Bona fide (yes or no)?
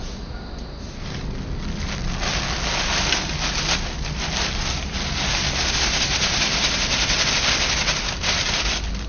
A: yes